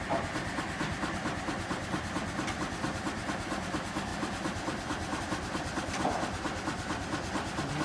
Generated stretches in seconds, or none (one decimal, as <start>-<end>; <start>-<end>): none